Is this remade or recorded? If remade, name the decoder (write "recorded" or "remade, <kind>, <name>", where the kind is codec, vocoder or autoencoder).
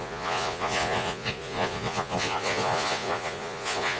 remade, vocoder, Vocos